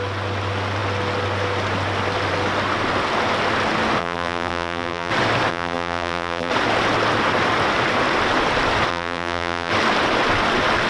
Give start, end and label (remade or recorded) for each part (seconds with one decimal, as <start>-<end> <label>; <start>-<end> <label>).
0.0-4.0 recorded; 4.0-5.1 remade; 5.1-5.5 recorded; 5.5-6.5 remade; 6.5-8.9 recorded; 8.9-9.7 remade; 9.7-10.9 recorded